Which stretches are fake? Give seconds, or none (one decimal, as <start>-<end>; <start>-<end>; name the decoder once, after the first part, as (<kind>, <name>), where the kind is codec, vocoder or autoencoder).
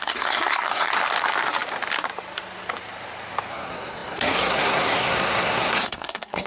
0.0-0.9 (codec, SNAC); 3.5-6.5